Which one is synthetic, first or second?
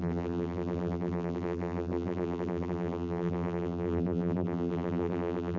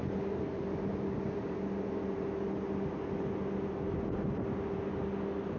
first